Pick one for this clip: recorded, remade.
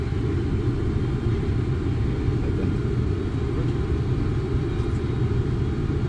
recorded